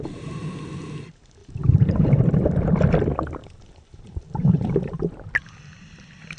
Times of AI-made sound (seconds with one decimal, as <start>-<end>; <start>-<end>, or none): 1.4-2.2; 3.4-5.1

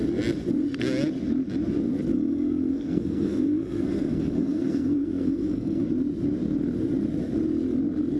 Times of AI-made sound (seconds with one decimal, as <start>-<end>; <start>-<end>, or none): 2.1-5.9

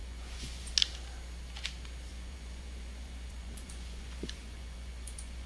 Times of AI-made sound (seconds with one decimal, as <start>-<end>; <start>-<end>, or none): 0.0-0.7; 2.1-5.5

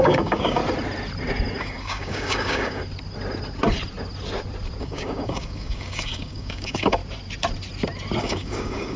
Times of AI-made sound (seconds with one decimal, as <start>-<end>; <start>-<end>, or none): 0.0-0.6; 1.6-2.8; 4.8-7.0; 8.2-9.0

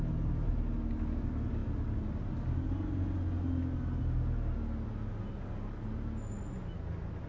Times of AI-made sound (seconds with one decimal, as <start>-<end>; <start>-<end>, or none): none